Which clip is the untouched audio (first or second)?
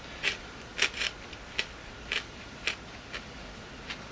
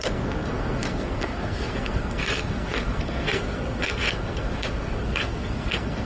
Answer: first